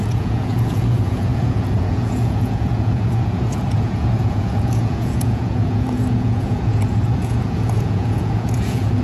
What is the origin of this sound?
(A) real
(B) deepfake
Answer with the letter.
B